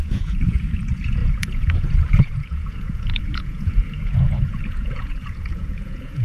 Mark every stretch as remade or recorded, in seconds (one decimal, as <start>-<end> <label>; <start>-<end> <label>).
0.0-6.2 remade